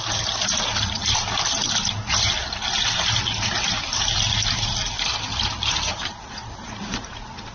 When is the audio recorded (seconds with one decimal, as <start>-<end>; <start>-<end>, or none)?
1.0-5.5